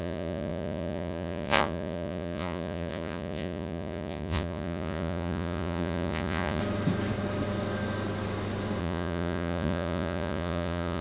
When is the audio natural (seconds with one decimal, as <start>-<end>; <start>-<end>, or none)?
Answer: 6.6-8.8